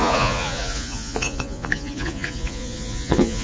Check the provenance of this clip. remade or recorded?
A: remade